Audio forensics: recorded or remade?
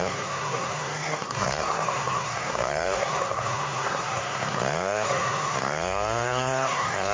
remade